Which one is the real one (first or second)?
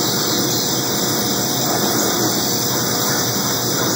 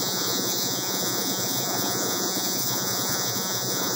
first